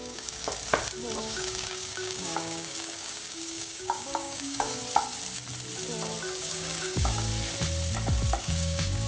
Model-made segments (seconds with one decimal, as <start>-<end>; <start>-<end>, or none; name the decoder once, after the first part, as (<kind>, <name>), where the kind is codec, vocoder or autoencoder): 0.0-0.5 (codec, DAC); 1.2-4.8; 6.4-7.3; 8.4-9.1